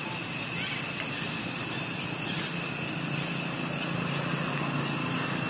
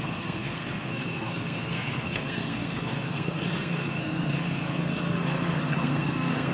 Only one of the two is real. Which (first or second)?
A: first